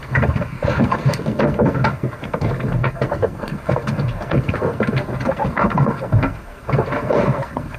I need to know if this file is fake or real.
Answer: fake